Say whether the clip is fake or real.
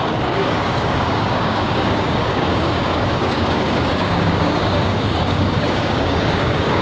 fake